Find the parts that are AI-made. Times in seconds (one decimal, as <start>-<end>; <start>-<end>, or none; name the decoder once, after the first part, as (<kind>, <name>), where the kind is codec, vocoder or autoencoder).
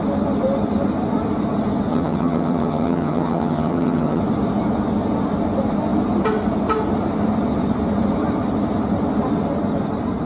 1.9-4.2 (vocoder, HiFi-GAN)